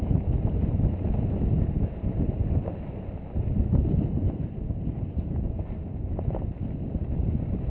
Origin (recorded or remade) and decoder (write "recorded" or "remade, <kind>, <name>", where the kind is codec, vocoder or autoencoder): recorded